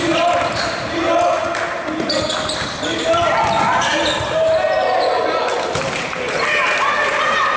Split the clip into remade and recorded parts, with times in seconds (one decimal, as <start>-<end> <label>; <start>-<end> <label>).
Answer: 0.0-7.6 recorded